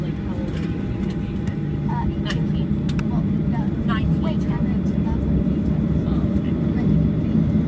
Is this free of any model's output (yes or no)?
yes